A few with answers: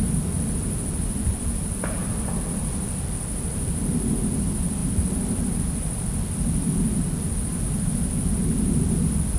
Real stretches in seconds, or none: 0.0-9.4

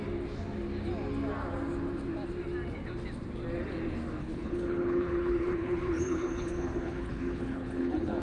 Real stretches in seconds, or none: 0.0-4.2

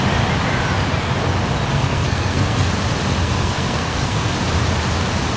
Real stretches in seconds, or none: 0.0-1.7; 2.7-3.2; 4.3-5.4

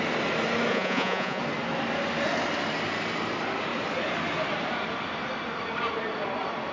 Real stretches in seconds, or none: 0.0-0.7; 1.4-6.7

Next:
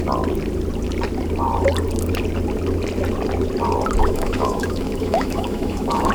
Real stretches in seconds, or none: 0.0-4.0

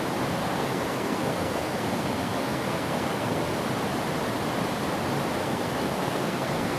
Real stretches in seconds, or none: 0.0-0.4; 3.5-5.4

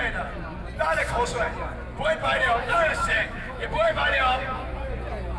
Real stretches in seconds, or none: 0.0-1.0; 1.5-2.2; 4.7-5.4

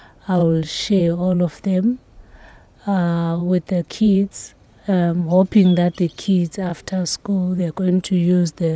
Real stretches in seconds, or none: 3.4-3.9; 6.7-7.6